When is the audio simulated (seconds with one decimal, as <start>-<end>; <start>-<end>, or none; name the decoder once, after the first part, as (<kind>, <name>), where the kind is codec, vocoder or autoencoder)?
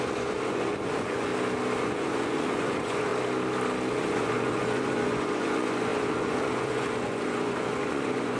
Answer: 0.0-1.3 (vocoder, Vocos); 1.8-3.1; 3.9-8.4